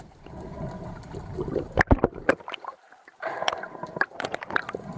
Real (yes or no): yes